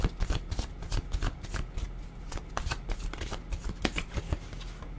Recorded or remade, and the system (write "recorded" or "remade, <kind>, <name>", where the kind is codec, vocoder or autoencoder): recorded